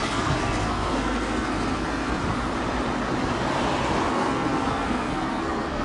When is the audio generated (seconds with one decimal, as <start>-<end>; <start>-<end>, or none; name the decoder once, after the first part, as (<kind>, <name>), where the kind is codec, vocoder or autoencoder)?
0.0-2.2 (codec, SNAC); 4.1-5.8